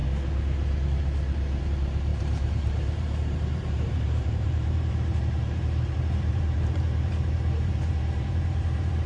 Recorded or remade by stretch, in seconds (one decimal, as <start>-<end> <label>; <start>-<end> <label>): 0.0-1.6 recorded; 1.6-9.1 remade